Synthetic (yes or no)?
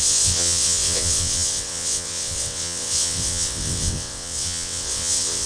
yes